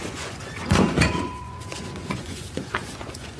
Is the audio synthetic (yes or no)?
yes